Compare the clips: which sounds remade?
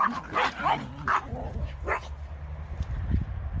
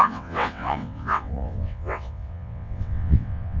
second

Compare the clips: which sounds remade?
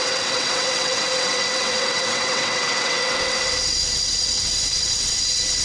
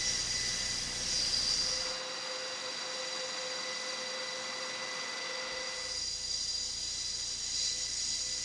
first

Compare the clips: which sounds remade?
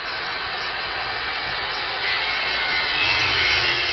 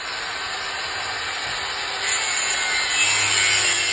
first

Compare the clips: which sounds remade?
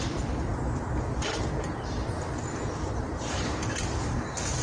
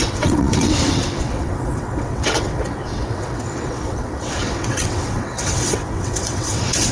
second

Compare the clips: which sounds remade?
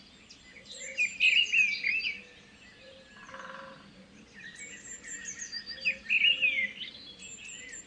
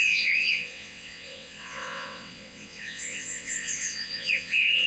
second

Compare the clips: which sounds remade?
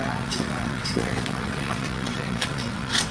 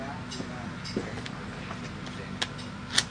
first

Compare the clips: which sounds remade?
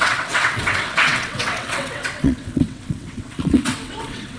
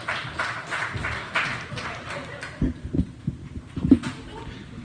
first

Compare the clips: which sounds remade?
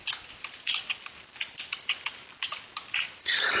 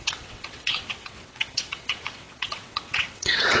second